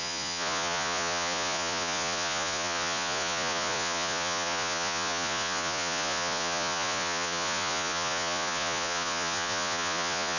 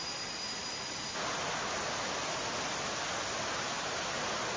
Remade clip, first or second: first